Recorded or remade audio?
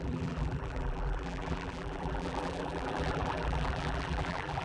remade